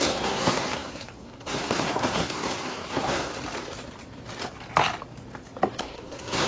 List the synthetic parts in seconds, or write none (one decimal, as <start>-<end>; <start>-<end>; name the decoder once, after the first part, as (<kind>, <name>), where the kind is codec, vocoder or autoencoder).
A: 0.0-3.3 (codec, SNAC); 5.8-6.5